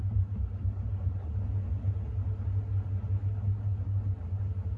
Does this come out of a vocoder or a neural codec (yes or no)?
no